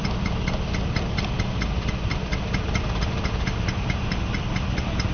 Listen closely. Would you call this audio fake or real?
real